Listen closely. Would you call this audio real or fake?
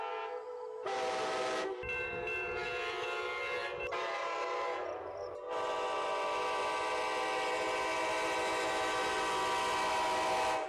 real